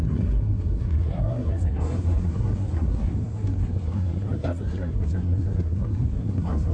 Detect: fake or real fake